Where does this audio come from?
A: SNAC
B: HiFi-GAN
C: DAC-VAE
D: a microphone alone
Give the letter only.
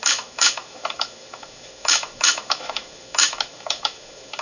C